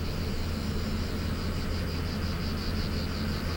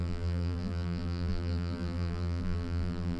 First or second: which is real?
first